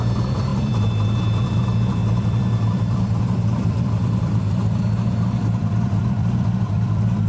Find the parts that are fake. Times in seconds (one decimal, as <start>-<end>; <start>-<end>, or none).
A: 0.5-1.6; 2.0-4.8; 5.6-7.3